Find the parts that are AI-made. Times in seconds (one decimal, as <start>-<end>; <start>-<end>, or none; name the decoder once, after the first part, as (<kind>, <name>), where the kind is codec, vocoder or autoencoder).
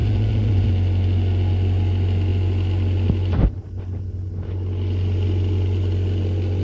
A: 0.0-0.7 (vocoder, Vocos)